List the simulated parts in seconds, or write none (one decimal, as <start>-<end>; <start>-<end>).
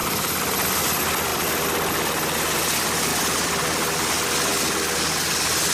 none